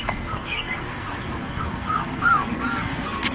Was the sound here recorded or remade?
remade